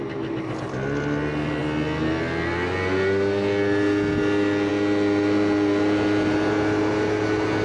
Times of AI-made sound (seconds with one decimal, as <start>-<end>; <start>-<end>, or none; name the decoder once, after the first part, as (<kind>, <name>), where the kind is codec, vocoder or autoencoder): none